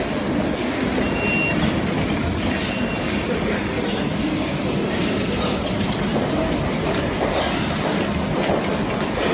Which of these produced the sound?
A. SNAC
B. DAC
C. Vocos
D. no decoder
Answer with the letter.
D